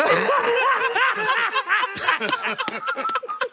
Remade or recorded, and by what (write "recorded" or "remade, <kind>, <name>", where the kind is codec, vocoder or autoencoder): recorded